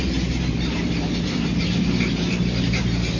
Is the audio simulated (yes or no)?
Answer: yes